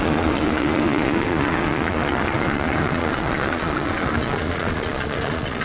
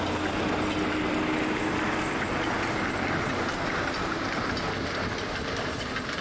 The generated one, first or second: first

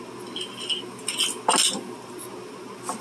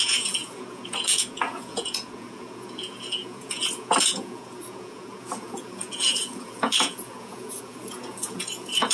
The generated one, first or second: second